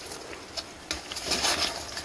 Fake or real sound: real